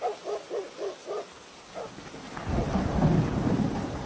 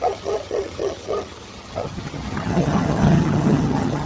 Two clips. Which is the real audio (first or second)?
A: first